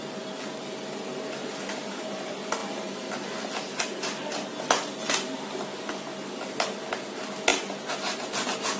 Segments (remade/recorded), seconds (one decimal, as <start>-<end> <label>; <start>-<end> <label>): 0.0-8.8 recorded